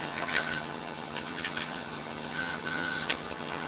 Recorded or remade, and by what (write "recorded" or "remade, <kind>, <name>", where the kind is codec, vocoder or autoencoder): remade, vocoder, HiFi-GAN